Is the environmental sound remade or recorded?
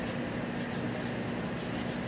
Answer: recorded